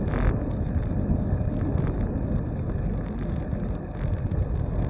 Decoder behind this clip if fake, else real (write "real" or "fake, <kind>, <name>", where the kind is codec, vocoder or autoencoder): real